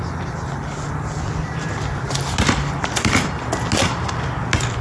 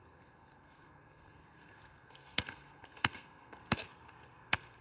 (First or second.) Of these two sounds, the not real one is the second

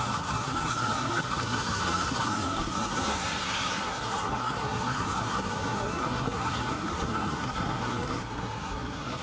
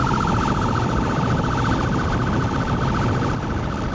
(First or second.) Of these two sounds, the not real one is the first